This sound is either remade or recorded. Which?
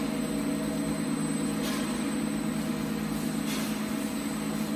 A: recorded